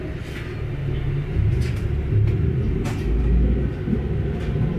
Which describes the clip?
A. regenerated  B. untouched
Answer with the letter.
B